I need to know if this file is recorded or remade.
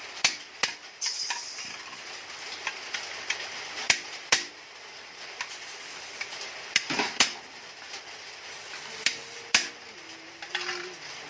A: remade